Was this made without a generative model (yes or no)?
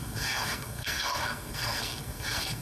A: no